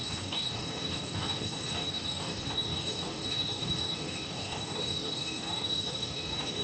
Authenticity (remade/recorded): remade